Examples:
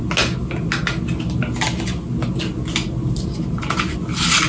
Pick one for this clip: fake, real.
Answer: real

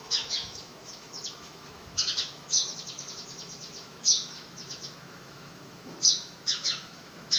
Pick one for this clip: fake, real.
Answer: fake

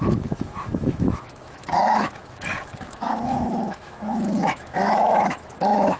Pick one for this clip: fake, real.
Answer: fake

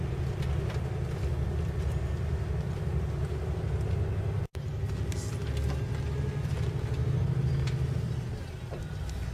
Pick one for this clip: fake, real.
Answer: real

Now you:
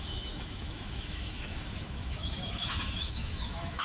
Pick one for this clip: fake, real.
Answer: fake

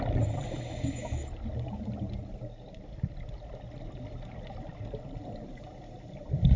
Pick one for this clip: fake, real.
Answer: real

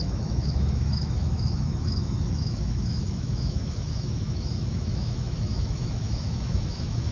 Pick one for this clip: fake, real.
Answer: fake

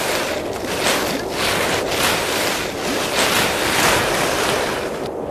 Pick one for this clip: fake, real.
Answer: real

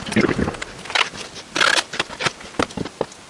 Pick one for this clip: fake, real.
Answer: real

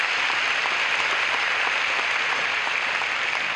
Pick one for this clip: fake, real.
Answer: real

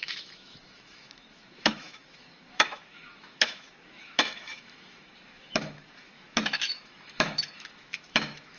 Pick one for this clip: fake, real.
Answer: fake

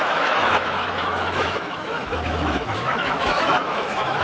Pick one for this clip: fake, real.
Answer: fake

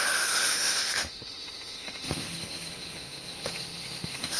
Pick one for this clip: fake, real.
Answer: fake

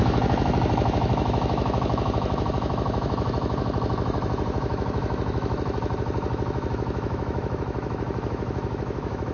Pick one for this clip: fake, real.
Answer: fake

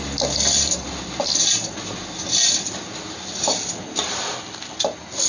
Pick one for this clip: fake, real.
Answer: real